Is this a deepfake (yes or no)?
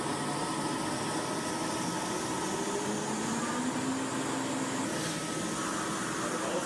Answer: no